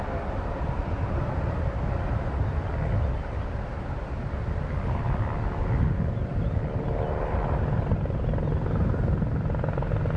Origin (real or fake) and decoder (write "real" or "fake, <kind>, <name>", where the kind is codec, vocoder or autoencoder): real